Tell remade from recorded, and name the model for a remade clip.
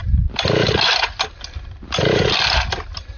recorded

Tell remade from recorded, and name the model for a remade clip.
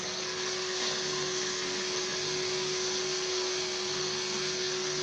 remade, codec, SNAC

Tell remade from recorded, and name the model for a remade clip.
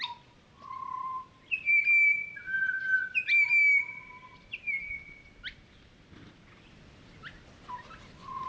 recorded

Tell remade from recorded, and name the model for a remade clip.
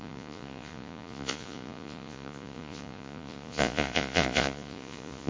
remade, vocoder, Vocos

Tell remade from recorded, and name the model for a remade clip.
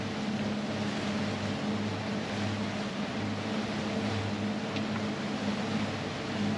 recorded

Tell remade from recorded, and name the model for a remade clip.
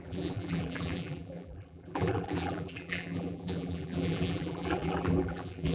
remade, vocoder, BigVGAN v2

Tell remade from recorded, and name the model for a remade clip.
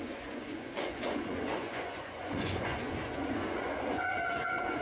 remade, vocoder, Vocos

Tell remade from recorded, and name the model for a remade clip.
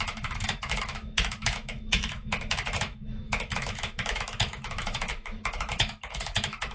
remade, autoencoder, DAC-VAE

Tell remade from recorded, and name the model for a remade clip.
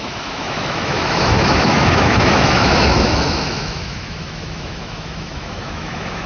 remade, autoencoder, DAC-VAE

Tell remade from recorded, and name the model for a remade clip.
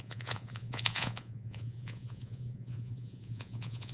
remade, vocoder, Vocos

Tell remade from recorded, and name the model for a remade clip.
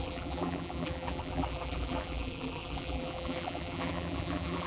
remade, vocoder, BigVGAN v2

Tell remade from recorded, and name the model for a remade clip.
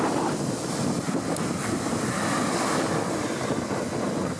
recorded